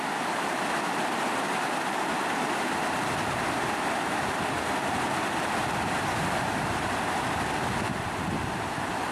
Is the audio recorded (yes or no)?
yes